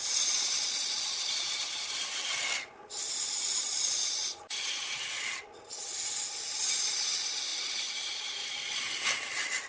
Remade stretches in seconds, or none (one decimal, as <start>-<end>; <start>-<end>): none